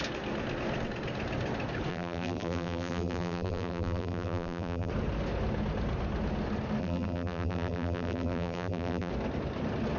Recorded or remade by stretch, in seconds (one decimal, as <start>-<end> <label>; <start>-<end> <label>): 0.0-1.9 recorded; 1.9-4.9 remade; 4.9-6.8 recorded; 6.8-9.1 remade; 9.1-10.0 recorded

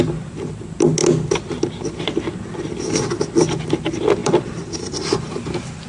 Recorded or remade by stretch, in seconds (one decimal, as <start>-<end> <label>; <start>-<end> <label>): 0.0-4.2 recorded; 4.2-5.0 remade; 5.0-5.9 recorded

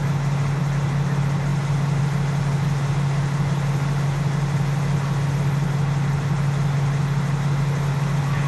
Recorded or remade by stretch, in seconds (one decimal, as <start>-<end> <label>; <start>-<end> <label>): 0.0-8.5 recorded